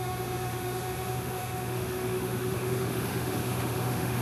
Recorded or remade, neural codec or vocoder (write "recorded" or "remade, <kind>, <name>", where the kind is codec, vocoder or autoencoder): remade, autoencoder, DAC-VAE